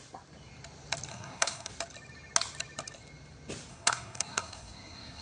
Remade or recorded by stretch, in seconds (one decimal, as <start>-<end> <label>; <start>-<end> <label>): 0.0-1.1 recorded; 1.1-1.7 remade; 1.7-3.7 recorded; 3.7-5.2 remade